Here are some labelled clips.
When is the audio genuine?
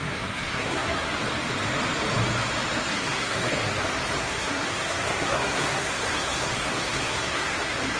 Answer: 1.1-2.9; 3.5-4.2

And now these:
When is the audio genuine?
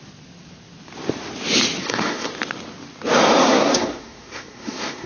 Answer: 0.0-1.8; 2.3-3.4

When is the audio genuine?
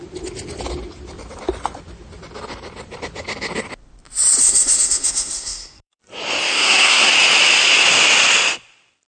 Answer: 0.0-4.4; 6.0-6.5; 7.1-9.2